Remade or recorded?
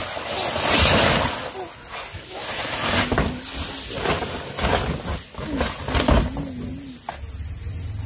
recorded